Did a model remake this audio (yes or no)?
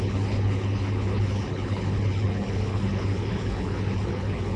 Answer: yes